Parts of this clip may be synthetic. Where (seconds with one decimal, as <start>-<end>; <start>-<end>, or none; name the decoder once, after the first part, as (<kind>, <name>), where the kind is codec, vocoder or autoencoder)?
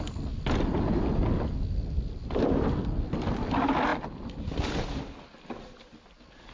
none